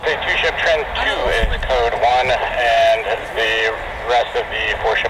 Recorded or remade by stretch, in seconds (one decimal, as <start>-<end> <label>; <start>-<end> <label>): 0.0-5.1 recorded